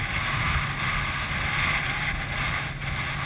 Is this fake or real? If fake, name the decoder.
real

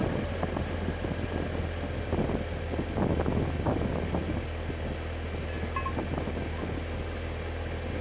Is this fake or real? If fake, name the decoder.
real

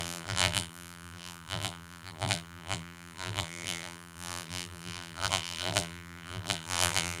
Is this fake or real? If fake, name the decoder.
fake, vocoder, BigVGAN v2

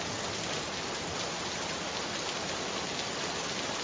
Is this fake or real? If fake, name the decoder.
real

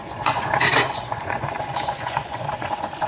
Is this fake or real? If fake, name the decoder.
fake, vocoder, Vocos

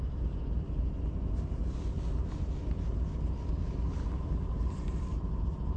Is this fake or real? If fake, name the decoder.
real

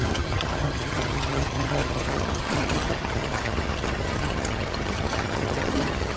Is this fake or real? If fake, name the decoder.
fake, vocoder, HiFi-GAN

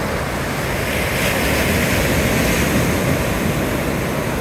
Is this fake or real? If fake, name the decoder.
real